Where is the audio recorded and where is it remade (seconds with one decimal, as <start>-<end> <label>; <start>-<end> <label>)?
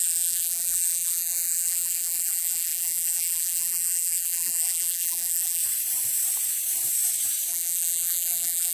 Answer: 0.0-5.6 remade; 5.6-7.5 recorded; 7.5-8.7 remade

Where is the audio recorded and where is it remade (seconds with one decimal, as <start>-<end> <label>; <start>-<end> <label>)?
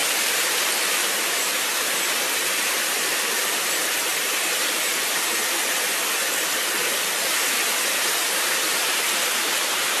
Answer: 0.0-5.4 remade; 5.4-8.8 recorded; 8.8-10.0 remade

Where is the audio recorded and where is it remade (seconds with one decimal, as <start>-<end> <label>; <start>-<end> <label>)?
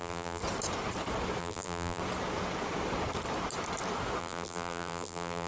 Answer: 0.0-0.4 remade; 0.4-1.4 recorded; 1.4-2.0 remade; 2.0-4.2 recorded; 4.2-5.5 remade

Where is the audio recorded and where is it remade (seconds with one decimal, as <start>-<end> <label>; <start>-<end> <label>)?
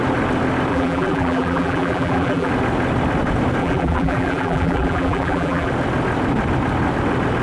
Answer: 0.0-0.7 recorded; 0.7-2.5 remade; 2.5-3.6 recorded; 3.6-5.7 remade; 5.7-7.4 recorded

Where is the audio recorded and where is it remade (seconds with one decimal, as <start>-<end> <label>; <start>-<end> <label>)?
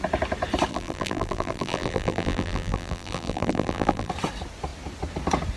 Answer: 0.0-0.7 recorded; 0.7-4.1 remade; 4.1-5.6 recorded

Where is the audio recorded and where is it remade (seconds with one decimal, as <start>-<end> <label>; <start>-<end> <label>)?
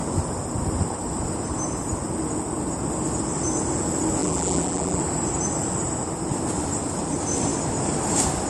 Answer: 0.0-4.2 recorded; 4.2-5.0 remade; 5.0-8.5 recorded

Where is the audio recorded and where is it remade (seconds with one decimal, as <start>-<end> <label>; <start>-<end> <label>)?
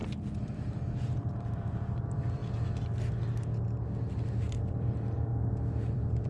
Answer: 0.0-1.3 recorded; 1.3-2.4 remade; 2.4-4.1 recorded; 4.1-5.3 remade; 5.3-5.8 recorded; 5.8-6.3 remade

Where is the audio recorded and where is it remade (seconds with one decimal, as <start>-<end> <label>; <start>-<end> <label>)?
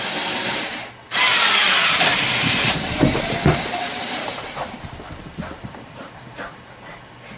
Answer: 0.0-1.6 recorded; 1.6-6.0 remade; 6.0-7.4 recorded